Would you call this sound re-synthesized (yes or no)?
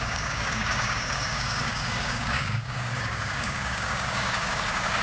yes